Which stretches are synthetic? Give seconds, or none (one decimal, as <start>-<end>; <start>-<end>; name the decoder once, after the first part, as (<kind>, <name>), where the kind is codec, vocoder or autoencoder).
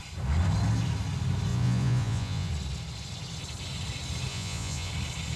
1.5-2.5 (vocoder, Vocos); 4.3-4.9